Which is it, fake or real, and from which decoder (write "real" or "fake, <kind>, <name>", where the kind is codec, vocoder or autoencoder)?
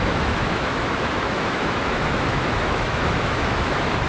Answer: fake, autoencoder, DAC-VAE